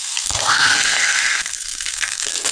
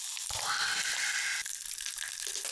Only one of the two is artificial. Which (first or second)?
first